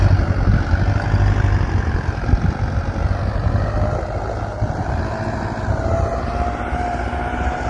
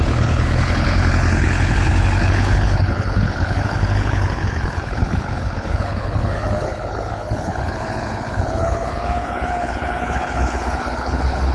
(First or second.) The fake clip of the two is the second